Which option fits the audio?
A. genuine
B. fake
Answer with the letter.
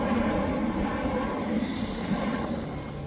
A